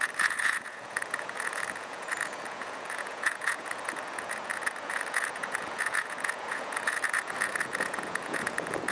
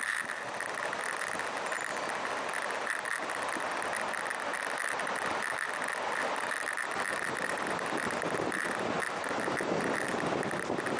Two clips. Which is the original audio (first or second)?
second